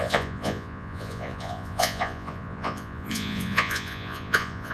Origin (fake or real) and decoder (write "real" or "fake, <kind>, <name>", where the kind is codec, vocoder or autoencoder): fake, vocoder, Vocos